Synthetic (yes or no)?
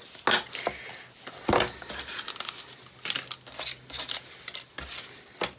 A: no